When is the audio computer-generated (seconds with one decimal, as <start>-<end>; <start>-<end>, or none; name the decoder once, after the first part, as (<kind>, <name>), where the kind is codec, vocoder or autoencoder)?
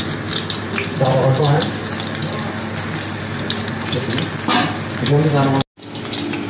none